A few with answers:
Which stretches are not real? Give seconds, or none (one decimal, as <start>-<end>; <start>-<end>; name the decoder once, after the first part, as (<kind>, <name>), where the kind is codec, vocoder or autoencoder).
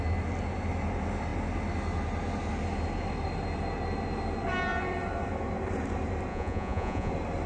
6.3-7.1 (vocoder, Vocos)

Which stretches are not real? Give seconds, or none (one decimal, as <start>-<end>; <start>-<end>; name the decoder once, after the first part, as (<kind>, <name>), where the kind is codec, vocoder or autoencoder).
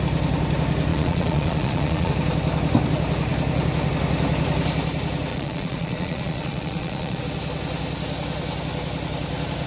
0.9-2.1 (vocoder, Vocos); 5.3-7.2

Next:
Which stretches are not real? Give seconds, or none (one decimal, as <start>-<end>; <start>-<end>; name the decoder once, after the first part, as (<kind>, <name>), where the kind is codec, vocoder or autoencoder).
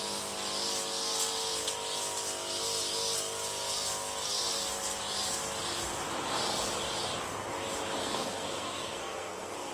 8.0-9.7 (codec, SNAC)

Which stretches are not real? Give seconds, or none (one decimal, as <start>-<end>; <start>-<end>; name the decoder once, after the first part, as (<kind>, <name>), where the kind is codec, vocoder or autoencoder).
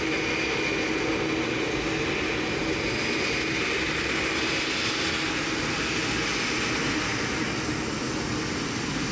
none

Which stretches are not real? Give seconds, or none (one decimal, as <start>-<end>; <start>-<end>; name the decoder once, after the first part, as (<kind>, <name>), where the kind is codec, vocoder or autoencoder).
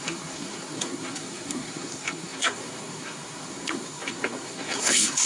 0.0-5.3 (codec, SNAC)